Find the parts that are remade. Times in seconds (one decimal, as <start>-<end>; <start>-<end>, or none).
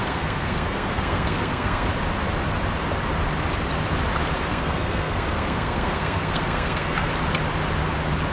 0.0-1.9; 4.5-7.1